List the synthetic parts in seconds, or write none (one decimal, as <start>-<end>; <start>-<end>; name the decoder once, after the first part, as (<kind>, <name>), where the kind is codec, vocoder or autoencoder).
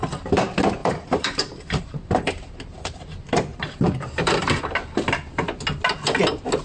0.8-2.5 (vocoder, BigVGAN v2); 3.5-4.4